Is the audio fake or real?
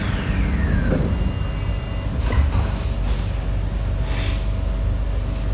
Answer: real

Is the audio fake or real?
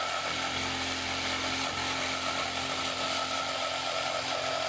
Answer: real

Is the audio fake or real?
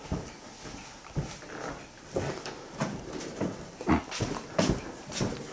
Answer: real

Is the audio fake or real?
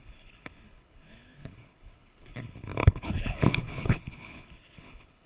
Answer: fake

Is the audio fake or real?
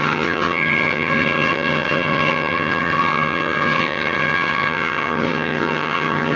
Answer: fake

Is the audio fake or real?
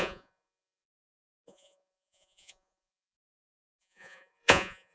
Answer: fake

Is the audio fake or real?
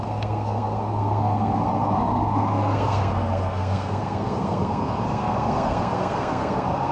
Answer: fake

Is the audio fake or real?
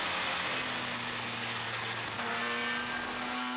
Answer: real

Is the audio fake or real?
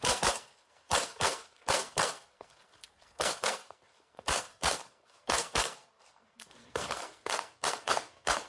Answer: fake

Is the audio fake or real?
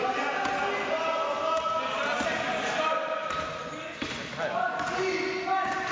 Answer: real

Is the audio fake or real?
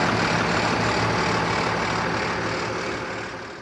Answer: real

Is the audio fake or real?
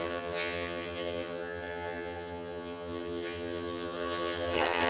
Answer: fake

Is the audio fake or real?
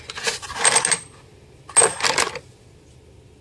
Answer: real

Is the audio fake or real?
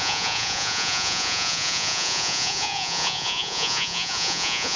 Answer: fake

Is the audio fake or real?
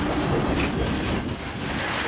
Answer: real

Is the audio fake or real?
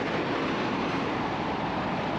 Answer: real